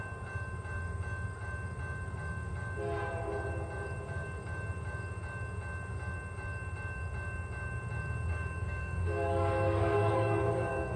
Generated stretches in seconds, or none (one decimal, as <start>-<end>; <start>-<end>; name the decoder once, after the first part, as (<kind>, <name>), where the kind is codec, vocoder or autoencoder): 8.3-11.0 (codec, DAC)